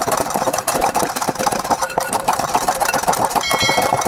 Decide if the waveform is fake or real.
fake